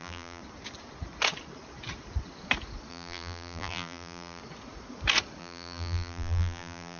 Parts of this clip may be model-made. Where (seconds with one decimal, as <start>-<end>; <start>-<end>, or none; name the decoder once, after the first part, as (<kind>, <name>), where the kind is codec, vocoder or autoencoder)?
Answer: 0.0-0.4 (vocoder, BigVGAN v2); 2.9-4.4; 5.4-7.0